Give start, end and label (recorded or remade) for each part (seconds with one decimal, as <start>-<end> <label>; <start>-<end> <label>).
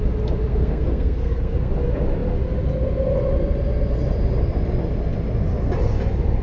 0.0-0.5 recorded; 0.5-1.7 remade; 1.7-6.4 recorded